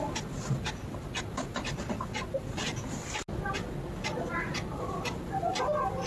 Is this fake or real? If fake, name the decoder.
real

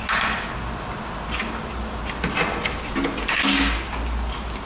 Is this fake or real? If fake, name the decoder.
real